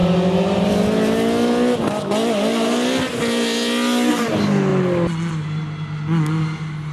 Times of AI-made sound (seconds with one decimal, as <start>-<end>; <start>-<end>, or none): none